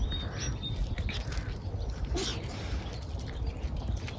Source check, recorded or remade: recorded